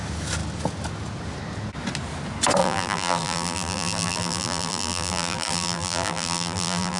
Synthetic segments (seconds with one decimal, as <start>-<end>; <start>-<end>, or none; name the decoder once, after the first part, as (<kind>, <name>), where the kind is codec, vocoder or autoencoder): 2.6-7.0 (vocoder, BigVGAN v2)

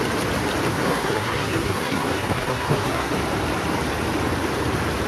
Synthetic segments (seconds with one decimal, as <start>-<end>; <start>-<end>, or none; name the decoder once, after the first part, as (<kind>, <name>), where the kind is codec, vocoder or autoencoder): 0.7-3.1 (codec, SNAC)